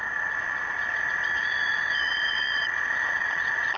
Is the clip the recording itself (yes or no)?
no